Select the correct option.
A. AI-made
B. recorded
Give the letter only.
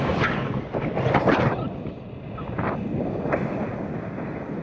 B